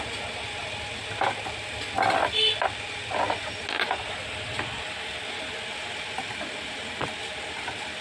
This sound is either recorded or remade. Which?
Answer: recorded